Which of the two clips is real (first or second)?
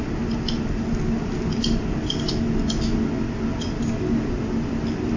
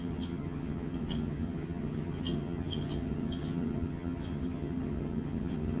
first